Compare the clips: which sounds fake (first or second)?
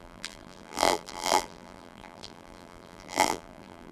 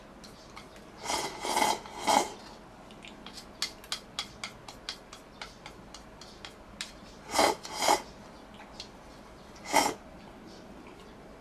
first